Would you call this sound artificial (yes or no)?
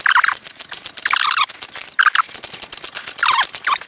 no